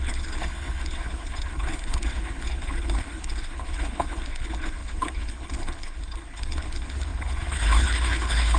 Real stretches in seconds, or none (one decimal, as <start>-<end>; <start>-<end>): none